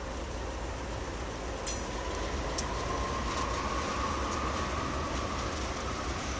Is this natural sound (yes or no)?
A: yes